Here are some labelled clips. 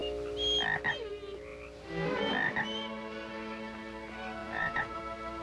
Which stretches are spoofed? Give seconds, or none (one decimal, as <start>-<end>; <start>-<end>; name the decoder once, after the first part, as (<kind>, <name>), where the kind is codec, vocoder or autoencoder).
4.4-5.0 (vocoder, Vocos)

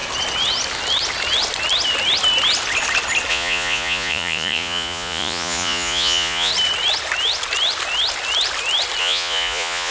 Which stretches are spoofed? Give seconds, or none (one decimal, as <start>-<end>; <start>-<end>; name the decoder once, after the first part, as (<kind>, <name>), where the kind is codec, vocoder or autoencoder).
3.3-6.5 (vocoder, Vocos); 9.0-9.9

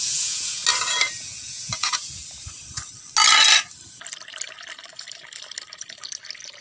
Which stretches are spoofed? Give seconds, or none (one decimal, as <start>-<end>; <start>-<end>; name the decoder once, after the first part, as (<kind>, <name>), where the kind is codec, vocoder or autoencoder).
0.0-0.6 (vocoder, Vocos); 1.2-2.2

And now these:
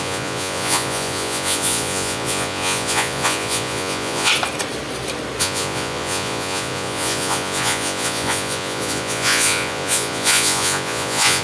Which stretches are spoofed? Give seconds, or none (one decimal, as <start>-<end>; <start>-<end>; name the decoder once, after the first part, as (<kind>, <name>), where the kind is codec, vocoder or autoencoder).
0.0-4.3 (vocoder, Vocos); 5.4-11.4